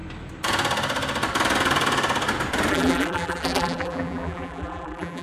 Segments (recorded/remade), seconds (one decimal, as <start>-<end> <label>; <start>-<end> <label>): 0.0-2.7 recorded; 2.7-5.2 remade